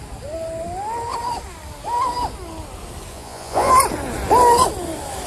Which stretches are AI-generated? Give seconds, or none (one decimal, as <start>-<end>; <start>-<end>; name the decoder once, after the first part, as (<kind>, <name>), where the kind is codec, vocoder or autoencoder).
3.1-3.7 (vocoder, Vocos)